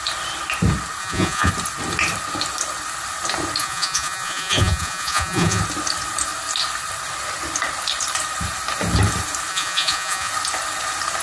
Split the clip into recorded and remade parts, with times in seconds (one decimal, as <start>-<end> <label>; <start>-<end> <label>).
0.0-1.0 recorded; 1.0-1.5 remade; 1.5-3.6 recorded; 3.6-5.6 remade; 5.6-9.5 recorded; 9.5-10.3 remade; 10.3-11.2 recorded